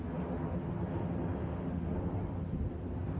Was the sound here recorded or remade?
recorded